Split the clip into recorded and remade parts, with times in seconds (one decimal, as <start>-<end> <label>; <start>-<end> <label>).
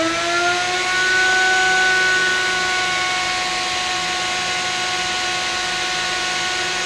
0.0-6.9 recorded